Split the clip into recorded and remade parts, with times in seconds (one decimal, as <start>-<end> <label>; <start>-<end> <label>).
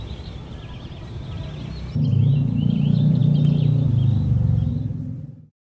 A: 0.0-1.4 remade; 1.4-2.2 recorded; 2.2-3.2 remade; 3.2-5.3 recorded; 5.3-5.8 remade